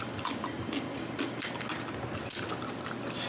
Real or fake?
real